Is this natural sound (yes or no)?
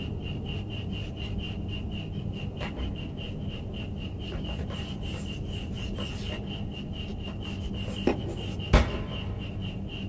yes